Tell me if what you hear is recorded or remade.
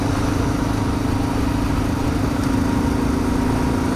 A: recorded